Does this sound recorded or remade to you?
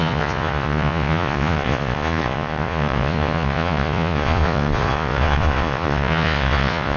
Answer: remade